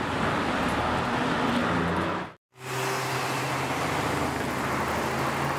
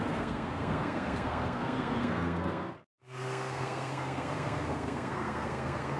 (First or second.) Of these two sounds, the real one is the first